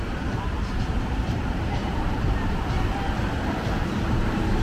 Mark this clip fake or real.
fake